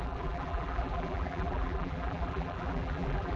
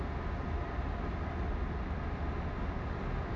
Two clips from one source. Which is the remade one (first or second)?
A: first